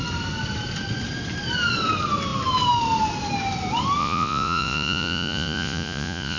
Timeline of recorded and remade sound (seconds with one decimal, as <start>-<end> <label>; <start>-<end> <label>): 0.0-4.0 recorded; 4.0-6.4 remade